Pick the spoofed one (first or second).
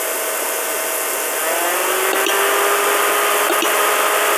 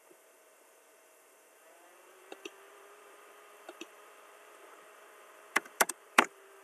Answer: second